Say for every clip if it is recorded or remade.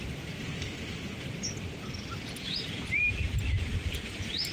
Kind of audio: remade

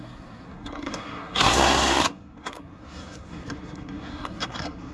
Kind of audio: remade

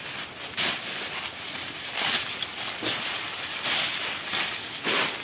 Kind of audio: recorded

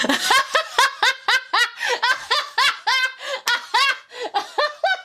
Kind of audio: recorded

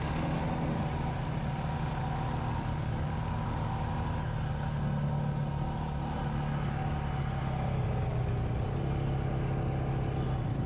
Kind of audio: recorded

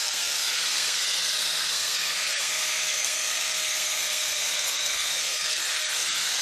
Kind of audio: remade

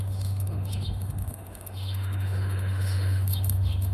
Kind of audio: remade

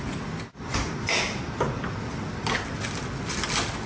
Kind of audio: recorded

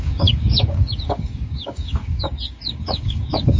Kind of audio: remade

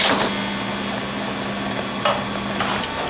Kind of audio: recorded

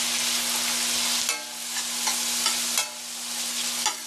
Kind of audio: recorded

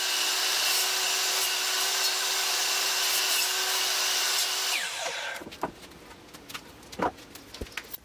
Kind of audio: recorded